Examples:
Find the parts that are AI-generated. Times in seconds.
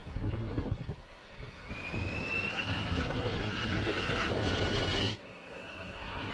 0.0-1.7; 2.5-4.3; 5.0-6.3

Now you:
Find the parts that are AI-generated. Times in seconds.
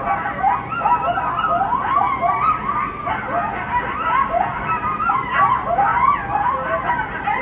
none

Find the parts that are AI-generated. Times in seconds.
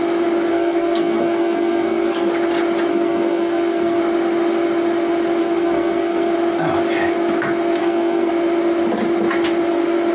0.5-2.3; 2.9-4.0; 5.4-6.3; 7.8-8.3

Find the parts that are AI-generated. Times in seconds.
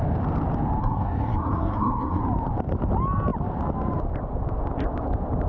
0.8-2.2